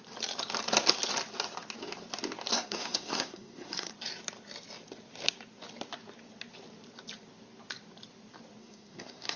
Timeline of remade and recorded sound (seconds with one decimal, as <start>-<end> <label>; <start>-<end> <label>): 0.0-2.5 recorded; 2.5-3.9 remade; 3.9-8.6 recorded; 8.6-9.4 remade